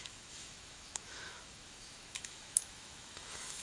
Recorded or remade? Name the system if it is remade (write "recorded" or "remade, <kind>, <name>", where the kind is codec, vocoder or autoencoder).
remade, autoencoder, DAC-VAE